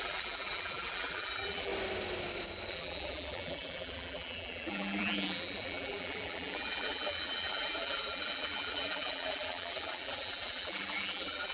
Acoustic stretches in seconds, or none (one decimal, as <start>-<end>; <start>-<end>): 1.7-2.7